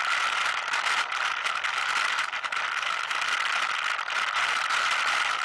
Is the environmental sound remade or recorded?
recorded